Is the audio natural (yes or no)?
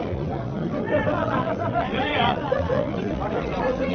no